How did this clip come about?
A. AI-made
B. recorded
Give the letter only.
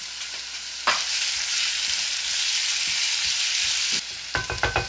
B